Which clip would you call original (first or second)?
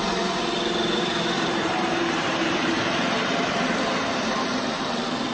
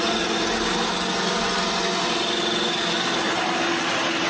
second